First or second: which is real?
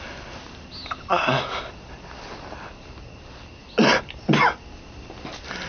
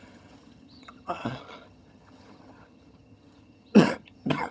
first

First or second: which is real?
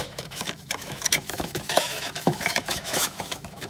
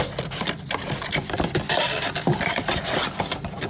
second